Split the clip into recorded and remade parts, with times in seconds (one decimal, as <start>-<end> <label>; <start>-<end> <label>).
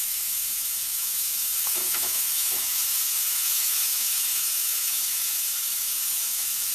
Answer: 0.0-6.7 remade